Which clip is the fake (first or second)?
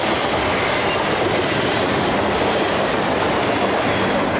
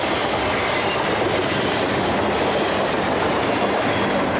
first